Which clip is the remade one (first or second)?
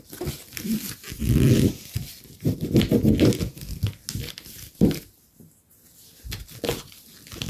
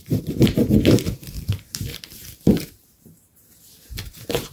second